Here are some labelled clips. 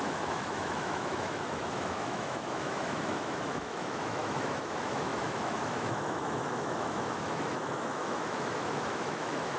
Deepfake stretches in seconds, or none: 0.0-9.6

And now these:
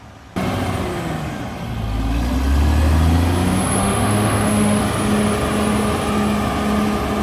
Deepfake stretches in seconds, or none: 3.8-4.8

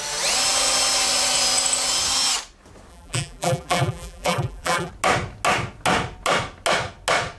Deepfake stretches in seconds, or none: 2.9-4.9

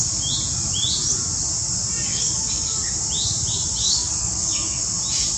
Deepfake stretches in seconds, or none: 2.1-2.8; 3.8-4.8